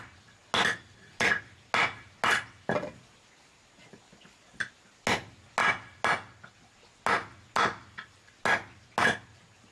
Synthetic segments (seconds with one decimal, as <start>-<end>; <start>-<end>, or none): none